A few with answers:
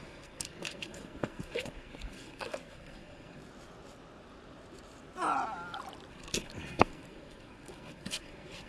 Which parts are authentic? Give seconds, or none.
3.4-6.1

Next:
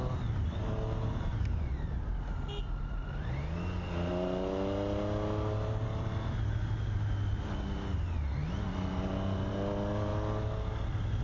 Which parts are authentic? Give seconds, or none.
0.0-11.2

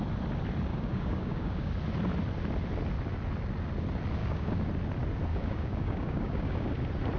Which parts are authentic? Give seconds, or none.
0.0-0.7; 1.7-4.2; 4.7-5.3; 6.7-7.2

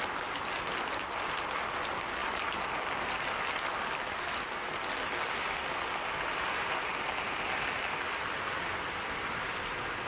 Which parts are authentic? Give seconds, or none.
0.0-10.1

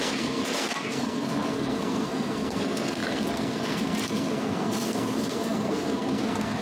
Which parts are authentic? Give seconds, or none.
none

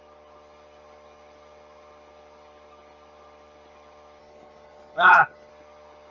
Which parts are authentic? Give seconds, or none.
0.0-4.2; 5.5-6.1

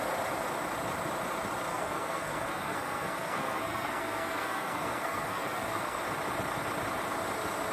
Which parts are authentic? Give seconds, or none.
0.0-1.7; 6.0-7.7